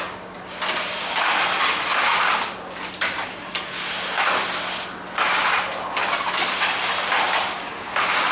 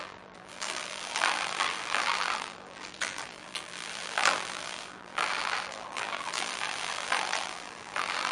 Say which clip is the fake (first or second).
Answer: second